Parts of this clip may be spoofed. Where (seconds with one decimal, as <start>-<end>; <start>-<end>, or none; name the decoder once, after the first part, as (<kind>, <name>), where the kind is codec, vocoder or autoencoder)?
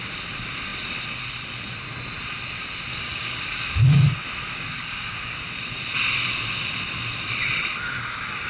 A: 2.9-4.0 (codec, DAC); 4.5-5.4